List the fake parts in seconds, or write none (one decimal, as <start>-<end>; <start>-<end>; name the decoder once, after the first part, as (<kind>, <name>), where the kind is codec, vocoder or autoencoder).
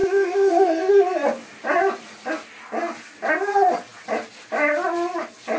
0.0-0.9 (codec, SNAC)